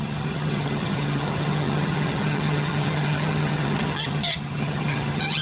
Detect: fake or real fake